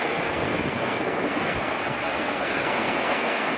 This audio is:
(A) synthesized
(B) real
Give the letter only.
A